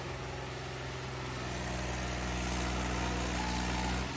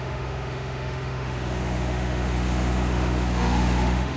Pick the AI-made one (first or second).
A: second